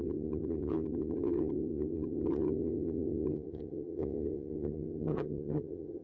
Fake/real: fake